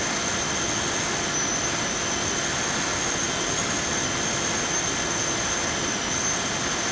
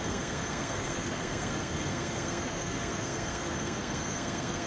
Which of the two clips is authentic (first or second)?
first